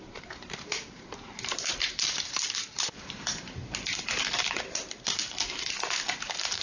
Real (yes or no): no